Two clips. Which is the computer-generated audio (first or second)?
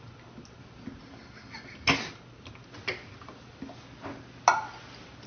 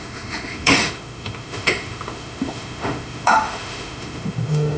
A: second